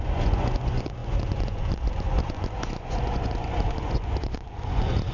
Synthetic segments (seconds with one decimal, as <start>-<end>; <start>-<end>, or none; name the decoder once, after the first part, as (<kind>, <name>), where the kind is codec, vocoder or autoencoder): 0.0-5.1 (vocoder, Vocos)